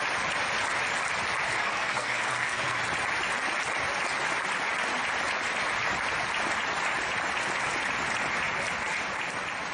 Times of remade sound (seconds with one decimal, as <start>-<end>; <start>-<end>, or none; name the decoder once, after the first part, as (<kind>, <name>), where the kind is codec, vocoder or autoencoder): 1.6-2.8 (codec, SNAC)